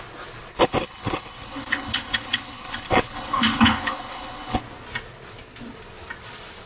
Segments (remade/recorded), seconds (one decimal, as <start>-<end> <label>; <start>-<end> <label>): 0.0-0.6 recorded; 0.6-4.6 remade; 4.6-6.7 recorded